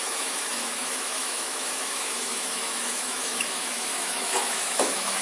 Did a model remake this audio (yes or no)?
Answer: yes